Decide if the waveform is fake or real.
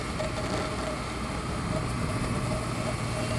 real